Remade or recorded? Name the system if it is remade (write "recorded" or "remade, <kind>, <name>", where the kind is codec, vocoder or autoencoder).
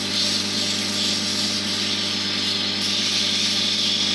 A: recorded